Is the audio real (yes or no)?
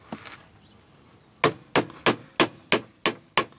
yes